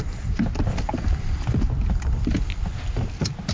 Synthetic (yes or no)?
no